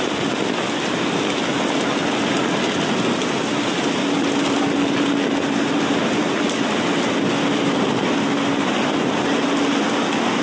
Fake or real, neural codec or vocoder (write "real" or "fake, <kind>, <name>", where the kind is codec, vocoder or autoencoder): real